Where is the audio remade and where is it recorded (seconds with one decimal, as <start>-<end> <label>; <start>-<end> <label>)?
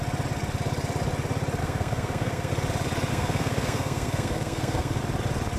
0.0-1.6 recorded; 1.6-2.5 remade; 2.5-3.1 recorded; 3.1-5.0 remade; 5.0-5.6 recorded